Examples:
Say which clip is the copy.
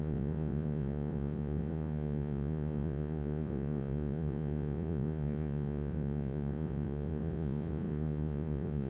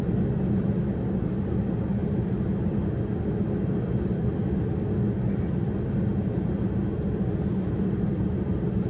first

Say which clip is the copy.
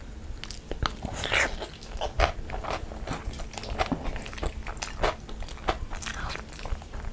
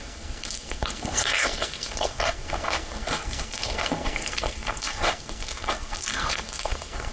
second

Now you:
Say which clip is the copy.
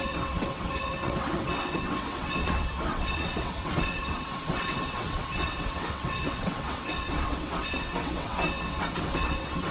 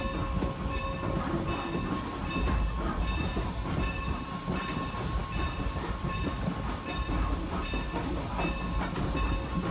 first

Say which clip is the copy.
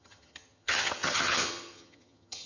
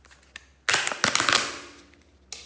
first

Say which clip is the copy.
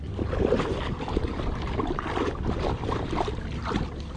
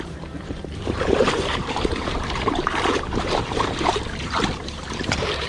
second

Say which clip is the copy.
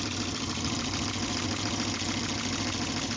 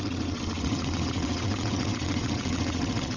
second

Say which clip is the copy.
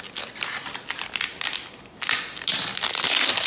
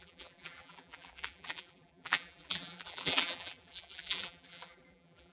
second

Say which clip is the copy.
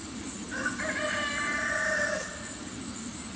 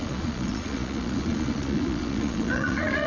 second